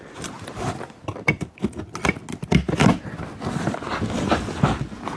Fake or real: real